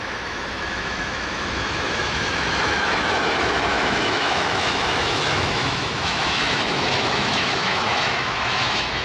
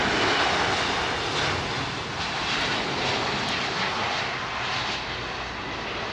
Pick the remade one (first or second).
first